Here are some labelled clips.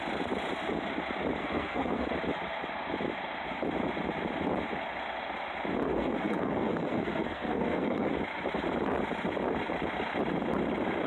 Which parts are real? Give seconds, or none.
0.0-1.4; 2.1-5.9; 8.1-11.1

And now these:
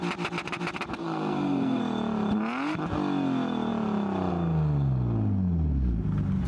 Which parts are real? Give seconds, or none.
0.0-1.0; 1.8-6.5

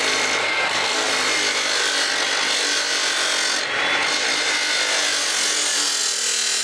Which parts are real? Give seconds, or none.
0.0-0.4; 1.1-6.6